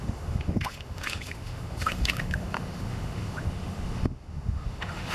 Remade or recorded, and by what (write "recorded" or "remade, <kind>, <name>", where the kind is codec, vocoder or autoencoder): remade, autoencoder, DAC-VAE